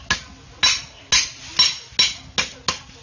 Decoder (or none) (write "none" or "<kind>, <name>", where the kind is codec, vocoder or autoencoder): none